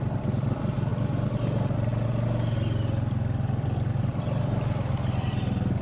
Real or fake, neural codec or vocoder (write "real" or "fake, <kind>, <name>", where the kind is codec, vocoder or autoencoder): real